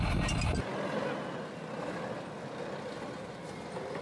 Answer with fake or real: real